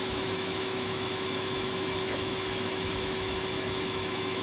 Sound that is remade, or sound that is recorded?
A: remade